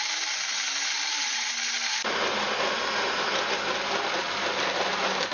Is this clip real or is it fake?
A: real